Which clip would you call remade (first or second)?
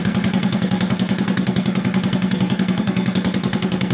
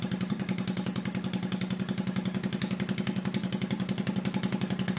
first